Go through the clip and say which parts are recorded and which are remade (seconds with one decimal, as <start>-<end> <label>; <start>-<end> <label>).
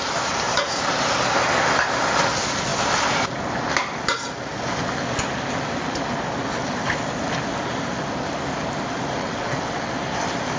0.0-9.2 recorded; 9.2-9.9 remade; 9.9-10.6 recorded